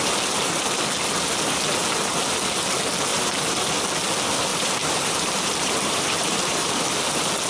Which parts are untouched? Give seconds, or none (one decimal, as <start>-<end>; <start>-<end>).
0.0-3.1; 3.6-4.5; 6.9-7.5